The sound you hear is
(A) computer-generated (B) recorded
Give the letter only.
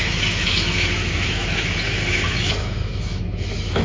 A